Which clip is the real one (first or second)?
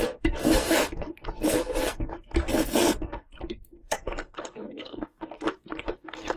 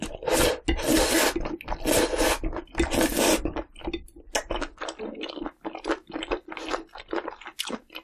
second